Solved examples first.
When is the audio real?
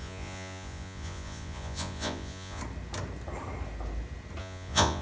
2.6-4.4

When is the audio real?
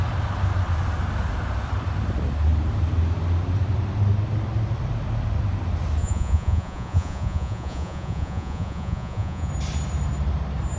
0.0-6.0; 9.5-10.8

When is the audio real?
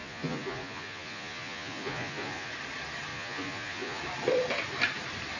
2.5-3.1; 4.0-5.4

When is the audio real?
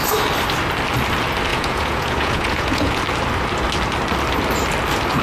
0.0-1.5; 3.0-5.2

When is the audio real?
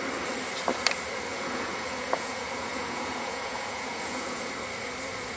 0.0-1.3; 4.5-5.4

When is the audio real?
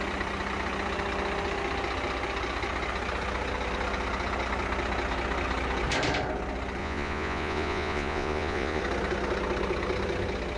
0.0-6.8; 8.8-10.6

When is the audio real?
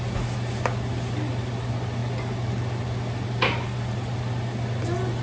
0.0-5.2